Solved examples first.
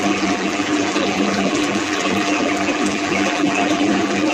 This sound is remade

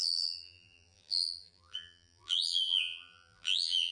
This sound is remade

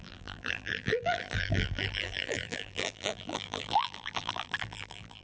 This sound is remade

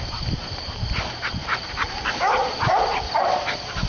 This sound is remade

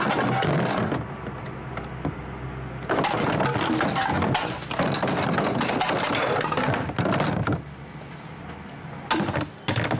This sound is recorded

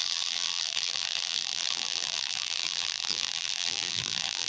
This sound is remade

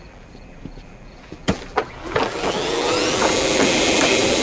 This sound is remade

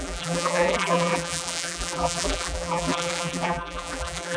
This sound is remade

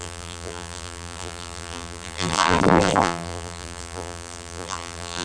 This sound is remade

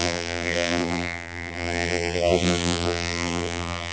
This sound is remade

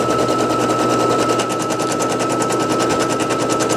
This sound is recorded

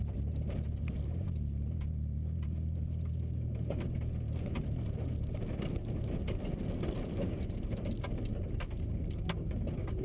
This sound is recorded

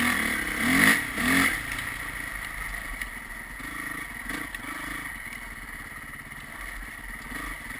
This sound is recorded